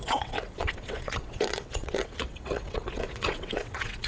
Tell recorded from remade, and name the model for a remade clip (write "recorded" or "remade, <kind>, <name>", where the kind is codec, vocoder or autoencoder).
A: remade, vocoder, WaveNeXt